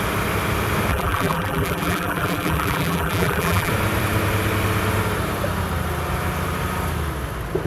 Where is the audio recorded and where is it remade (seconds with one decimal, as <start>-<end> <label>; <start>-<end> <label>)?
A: 0.0-0.9 recorded; 0.9-3.7 remade; 3.7-7.7 recorded